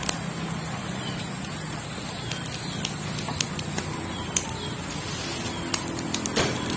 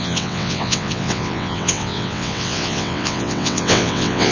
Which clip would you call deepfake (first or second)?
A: second